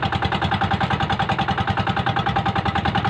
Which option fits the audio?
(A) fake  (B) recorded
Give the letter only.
B